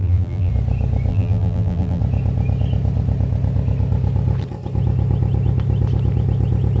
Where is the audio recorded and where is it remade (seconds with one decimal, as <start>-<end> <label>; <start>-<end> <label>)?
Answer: 0.0-0.5 remade; 0.5-1.1 recorded; 1.1-2.0 remade; 2.0-6.8 recorded